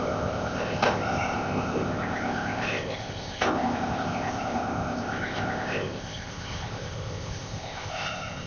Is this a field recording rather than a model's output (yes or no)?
no